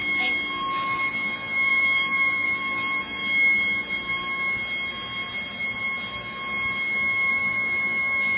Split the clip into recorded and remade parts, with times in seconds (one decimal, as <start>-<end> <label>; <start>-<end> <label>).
0.0-1.1 recorded; 1.1-3.2 remade; 3.2-7.3 recorded; 7.3-8.4 remade